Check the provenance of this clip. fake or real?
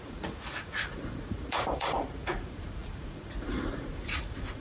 fake